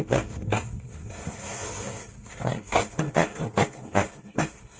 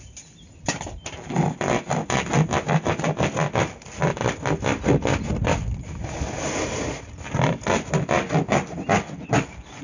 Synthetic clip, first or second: first